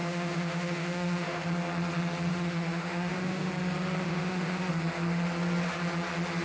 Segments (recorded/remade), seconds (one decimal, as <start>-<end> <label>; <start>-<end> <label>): 0.0-1.5 remade; 1.5-2.3 recorded; 2.3-3.5 remade; 3.5-4.0 recorded; 4.0-4.7 remade; 4.7-6.4 recorded